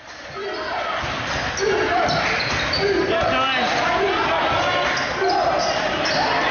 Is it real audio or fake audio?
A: real